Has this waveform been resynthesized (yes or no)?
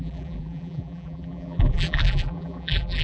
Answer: yes